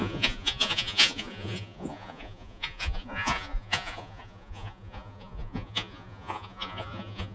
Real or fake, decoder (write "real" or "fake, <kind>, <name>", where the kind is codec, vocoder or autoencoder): fake, vocoder, Vocos